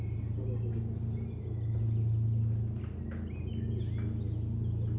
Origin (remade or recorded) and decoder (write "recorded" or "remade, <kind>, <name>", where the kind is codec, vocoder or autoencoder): recorded